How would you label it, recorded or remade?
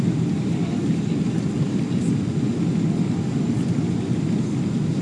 recorded